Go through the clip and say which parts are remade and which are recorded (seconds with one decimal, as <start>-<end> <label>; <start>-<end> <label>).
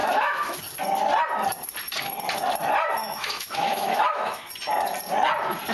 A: 0.0-0.6 remade; 0.6-3.0 recorded; 3.0-4.5 remade; 4.5-5.7 recorded